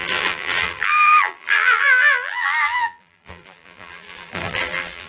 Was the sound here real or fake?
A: fake